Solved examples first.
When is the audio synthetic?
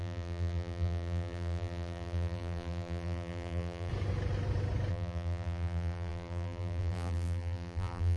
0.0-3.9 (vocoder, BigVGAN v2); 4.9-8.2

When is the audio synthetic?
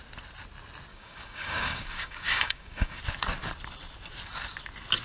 0.9-3.0 (codec, DAC)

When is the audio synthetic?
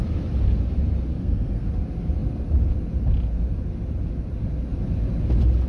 1.1-1.7 (codec, SNAC)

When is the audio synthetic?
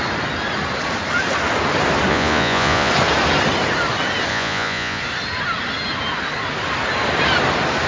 2.1-2.9 (vocoder, Vocos); 4.3-5.0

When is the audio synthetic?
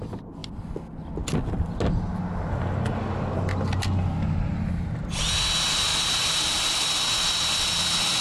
5.9-6.8 (vocoder, BigVGAN v2)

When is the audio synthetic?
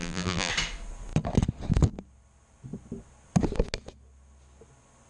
0.0-0.5 (vocoder, BigVGAN v2)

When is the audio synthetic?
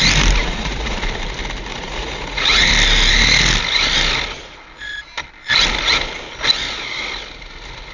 0.4-1.0 (vocoder, Vocos); 1.7-2.7